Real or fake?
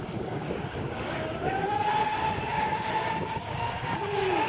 fake